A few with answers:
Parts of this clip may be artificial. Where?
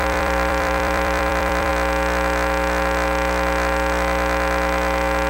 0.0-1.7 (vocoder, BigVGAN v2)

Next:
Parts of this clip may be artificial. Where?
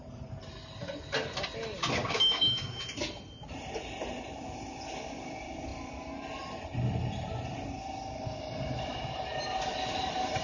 2.0-2.8 (codec, DAC)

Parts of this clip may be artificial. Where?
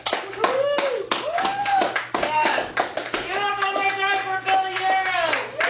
0.0-1.7 (codec, DAC); 2.3-4.2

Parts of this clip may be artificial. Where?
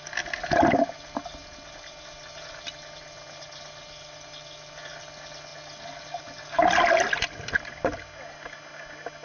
none